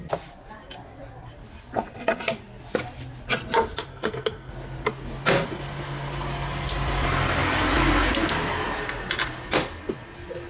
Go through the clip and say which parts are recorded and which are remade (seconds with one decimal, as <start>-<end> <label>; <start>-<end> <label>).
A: 0.0-3.9 recorded; 3.9-4.5 remade; 4.5-10.5 recorded